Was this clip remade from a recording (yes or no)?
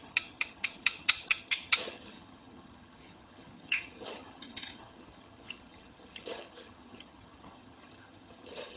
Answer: yes